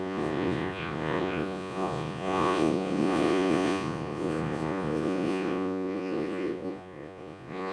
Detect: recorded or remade remade